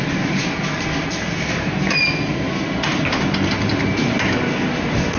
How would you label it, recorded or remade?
recorded